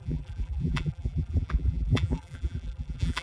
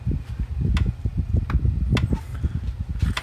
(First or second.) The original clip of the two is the second